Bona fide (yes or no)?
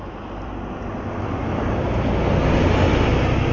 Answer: yes